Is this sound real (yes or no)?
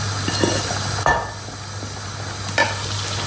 yes